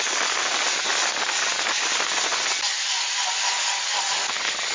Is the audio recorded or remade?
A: recorded